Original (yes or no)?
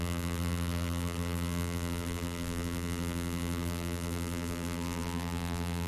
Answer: no